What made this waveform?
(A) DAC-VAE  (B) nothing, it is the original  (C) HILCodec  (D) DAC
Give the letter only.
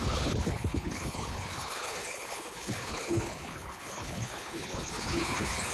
C